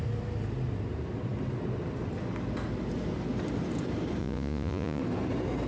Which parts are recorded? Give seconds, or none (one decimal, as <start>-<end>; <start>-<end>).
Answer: 0.0-4.2; 5.0-5.7